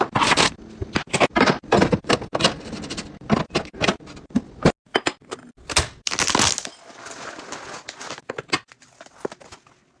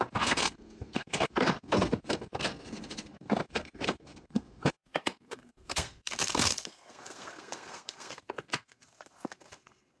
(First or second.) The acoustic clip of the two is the first